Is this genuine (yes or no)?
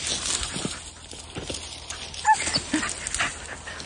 yes